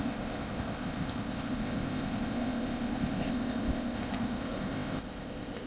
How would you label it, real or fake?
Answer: fake